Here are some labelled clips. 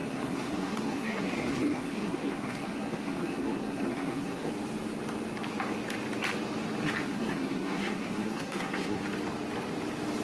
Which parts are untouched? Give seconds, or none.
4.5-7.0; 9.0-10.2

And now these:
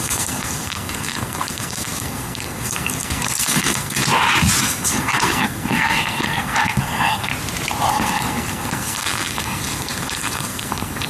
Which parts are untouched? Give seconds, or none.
4.0-4.6; 7.3-7.9

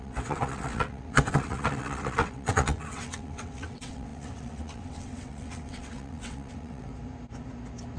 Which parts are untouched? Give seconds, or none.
6.9-8.0

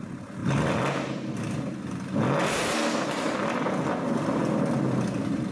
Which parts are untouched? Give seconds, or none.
0.0-5.5

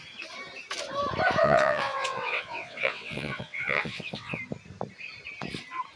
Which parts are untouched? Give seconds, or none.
0.0-1.4; 4.4-6.0

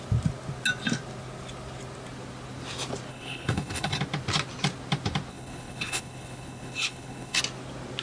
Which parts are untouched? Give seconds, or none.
0.0-3.1; 4.0-5.3; 7.4-8.0

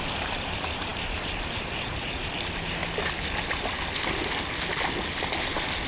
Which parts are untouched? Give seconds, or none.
2.8-5.5